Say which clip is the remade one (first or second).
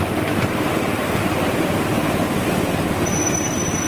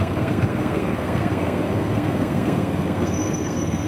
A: second